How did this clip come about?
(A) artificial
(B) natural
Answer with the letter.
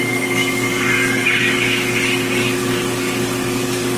A